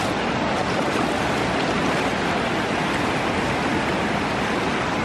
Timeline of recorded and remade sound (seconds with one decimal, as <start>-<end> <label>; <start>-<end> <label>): 0.0-5.0 recorded